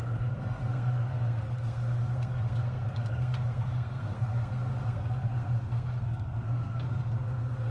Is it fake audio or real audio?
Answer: fake